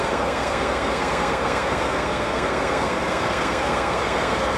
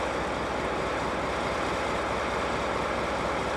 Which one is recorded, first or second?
second